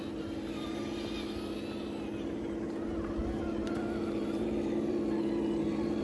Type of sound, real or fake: real